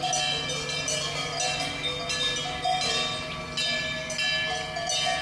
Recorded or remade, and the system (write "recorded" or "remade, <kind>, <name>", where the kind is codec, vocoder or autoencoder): recorded